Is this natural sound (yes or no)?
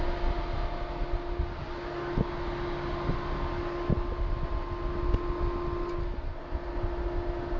yes